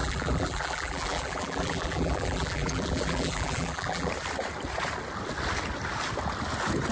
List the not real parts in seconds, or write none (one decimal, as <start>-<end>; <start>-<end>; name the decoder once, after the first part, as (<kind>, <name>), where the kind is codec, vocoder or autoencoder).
0.0-4.1 (vocoder, BigVGAN v2)